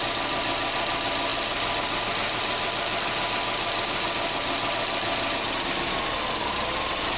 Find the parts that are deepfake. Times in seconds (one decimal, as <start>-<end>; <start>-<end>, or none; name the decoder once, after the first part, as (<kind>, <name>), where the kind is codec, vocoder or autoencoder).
none